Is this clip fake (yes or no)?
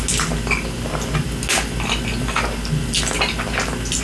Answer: no